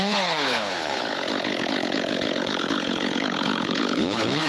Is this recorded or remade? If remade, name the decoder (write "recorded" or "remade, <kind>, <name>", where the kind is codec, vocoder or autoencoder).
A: remade, codec, HILCodec